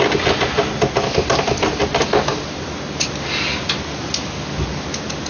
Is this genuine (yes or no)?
yes